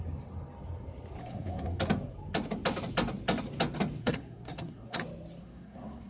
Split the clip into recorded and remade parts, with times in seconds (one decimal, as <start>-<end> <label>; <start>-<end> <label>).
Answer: 0.0-1.2 recorded; 1.2-1.8 remade; 1.8-4.0 recorded; 4.0-5.0 remade; 5.0-5.4 recorded; 5.4-6.1 remade